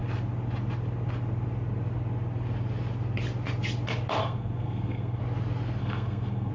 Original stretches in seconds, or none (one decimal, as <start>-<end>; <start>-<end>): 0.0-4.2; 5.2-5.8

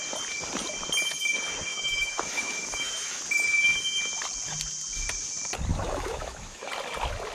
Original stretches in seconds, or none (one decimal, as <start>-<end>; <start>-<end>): 0.0-1.7; 3.2-5.7; 6.7-7.3

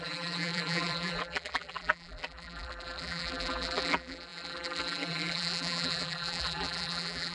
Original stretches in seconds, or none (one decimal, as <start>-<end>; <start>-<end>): none

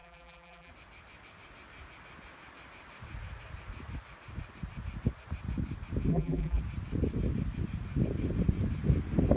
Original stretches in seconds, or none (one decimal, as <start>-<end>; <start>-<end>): 0.7-6.1; 6.6-9.4

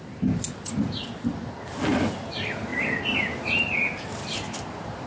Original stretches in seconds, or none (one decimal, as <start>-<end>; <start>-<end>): 0.0-5.1

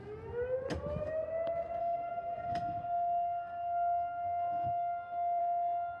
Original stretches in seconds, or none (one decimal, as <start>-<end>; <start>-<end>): 0.0-1.8; 5.4-6.0

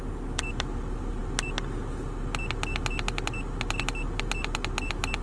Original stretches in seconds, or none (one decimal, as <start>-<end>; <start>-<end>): 0.0-5.2